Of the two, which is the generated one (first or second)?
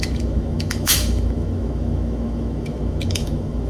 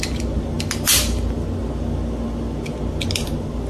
first